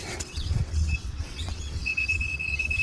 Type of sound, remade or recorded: remade